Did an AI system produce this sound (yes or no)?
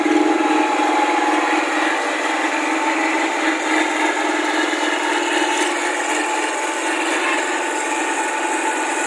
no